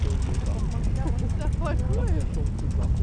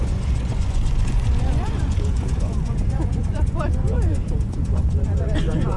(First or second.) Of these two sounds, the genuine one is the first